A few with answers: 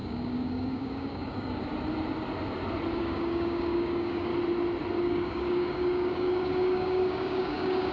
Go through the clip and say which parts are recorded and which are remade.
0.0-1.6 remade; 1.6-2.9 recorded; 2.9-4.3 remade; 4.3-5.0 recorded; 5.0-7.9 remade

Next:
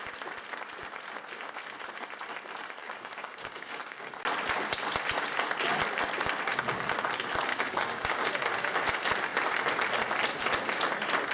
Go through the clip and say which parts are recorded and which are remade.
0.0-2.8 recorded; 2.8-4.1 remade; 4.1-7.5 recorded; 7.5-8.3 remade; 8.3-11.3 recorded